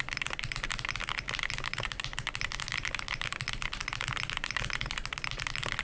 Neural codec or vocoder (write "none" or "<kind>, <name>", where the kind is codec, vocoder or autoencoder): none